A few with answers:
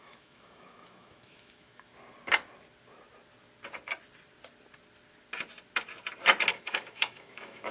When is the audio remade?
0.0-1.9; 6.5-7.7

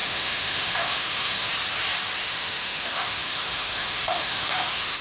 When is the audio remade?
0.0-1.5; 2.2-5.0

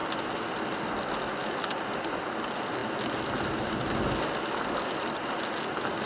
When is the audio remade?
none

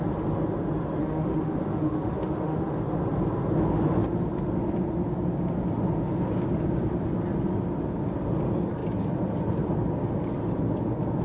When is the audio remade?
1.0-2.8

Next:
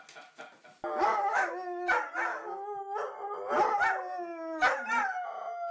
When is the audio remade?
1.3-1.9; 2.3-3.0